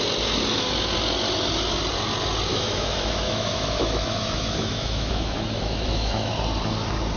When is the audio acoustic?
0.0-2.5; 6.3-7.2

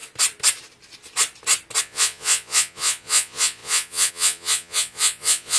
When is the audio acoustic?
0.0-1.8